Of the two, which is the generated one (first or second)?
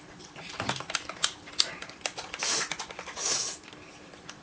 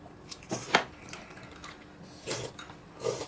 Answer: first